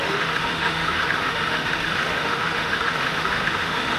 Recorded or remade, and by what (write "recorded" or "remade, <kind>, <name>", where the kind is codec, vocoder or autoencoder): remade, autoencoder, DAC-VAE